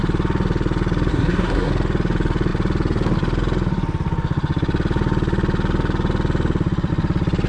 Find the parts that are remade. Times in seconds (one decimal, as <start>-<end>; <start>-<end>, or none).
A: 1.1-1.7